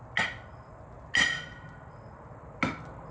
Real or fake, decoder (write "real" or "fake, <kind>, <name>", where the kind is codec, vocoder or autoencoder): real